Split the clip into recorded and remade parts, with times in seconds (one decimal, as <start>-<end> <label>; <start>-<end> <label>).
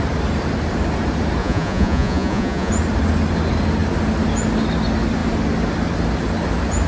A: 0.0-1.4 recorded; 1.4-2.7 remade; 2.7-6.9 recorded